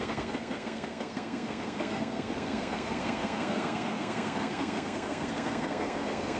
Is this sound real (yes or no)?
no